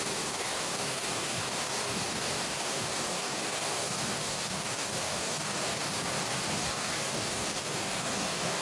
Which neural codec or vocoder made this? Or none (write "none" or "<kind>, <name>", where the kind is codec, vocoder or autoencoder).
codec, DAC